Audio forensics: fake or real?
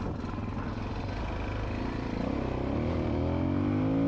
real